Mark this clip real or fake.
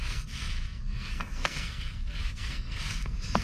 fake